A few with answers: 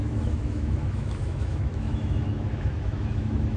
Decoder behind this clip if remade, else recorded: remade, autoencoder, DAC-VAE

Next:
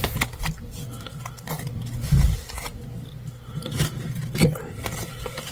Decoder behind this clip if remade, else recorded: recorded